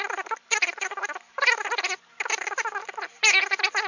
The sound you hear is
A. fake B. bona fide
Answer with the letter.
B